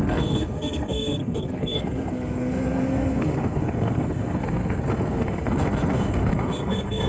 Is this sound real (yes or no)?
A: no